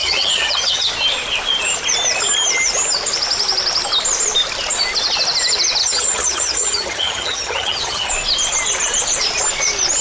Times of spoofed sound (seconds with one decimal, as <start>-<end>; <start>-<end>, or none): 0.0-0.9; 5.8-8.1